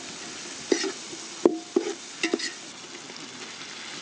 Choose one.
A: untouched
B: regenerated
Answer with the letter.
A